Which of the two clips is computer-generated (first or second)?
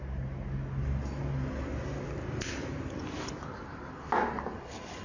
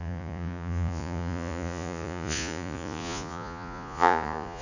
second